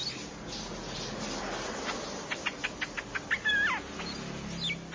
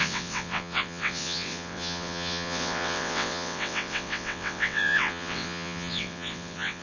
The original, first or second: first